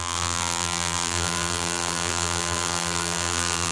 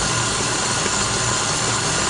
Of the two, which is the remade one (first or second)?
first